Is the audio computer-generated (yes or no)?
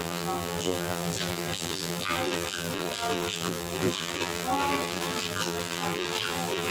yes